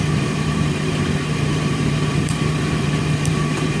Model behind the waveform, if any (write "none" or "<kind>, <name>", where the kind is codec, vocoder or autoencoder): vocoder, BigVGAN v2